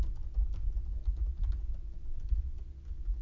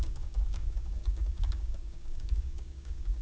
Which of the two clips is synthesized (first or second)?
second